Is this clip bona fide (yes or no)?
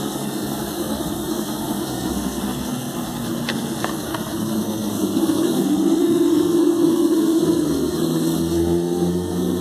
no